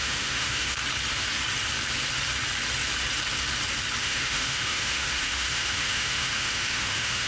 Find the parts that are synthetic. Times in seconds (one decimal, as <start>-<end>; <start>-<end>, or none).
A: 0.0-0.8; 4.0-7.3